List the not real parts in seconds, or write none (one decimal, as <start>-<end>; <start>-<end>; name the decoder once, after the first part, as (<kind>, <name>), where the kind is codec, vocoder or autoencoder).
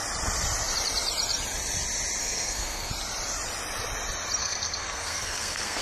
2.2-2.9 (codec, SNAC); 4.4-5.8